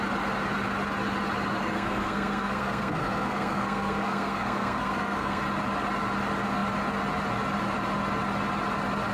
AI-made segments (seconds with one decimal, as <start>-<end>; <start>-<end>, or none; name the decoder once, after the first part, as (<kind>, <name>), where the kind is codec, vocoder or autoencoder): 1.6-5.4 (codec, SNAC)